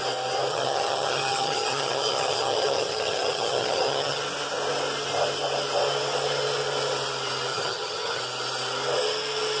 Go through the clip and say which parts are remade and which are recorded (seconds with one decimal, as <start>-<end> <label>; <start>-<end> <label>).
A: 0.0-0.5 recorded; 0.5-4.2 remade; 4.2-7.5 recorded; 7.5-8.2 remade; 8.2-9.6 recorded